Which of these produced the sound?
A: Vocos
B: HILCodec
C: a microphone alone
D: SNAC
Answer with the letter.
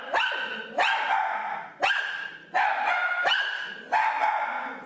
C